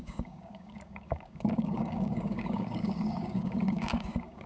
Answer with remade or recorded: remade